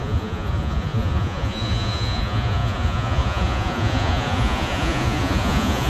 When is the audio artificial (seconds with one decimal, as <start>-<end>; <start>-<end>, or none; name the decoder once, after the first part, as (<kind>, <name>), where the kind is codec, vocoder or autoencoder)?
0.0-5.9 (vocoder, Vocos)